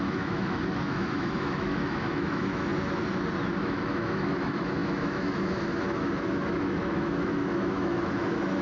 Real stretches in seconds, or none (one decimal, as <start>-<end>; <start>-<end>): 2.7-3.6